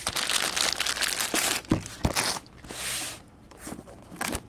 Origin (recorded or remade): recorded